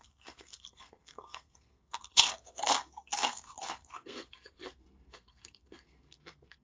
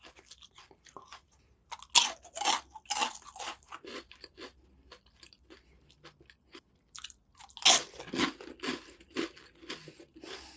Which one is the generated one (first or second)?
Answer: first